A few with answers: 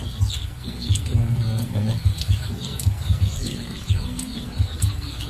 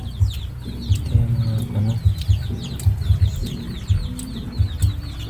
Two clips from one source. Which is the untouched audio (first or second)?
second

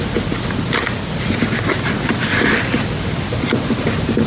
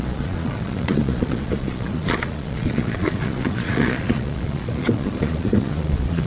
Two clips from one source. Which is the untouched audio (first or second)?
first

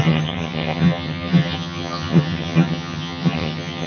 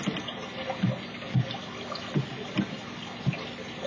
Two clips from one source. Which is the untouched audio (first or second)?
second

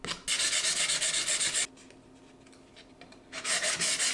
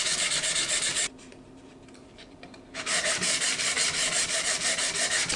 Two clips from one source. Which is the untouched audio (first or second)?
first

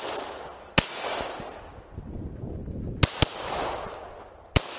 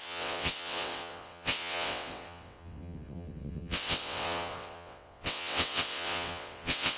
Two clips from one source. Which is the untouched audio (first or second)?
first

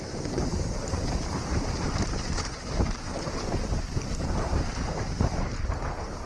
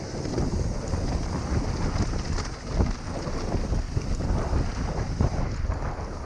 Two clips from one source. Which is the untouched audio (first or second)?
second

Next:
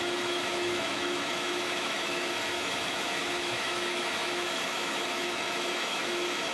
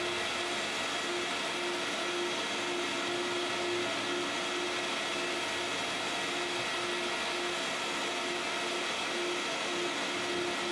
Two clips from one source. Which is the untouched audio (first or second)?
second